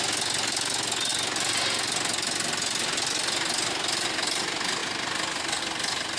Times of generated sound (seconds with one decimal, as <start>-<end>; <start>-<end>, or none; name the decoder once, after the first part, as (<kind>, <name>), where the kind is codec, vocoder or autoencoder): none